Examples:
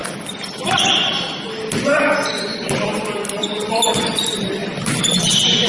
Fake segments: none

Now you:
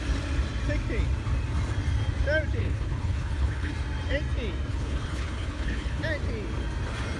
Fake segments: 2.6-3.7 (codec, HILCodec); 4.7-6.0

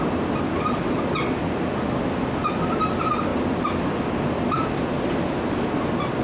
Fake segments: none

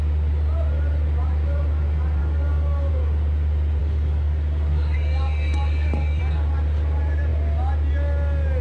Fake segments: 2.2-2.9 (codec, DAC); 3.8-6.2

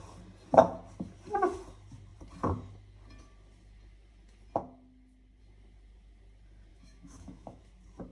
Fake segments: 6.7-7.6 (autoencoder, DAC-VAE)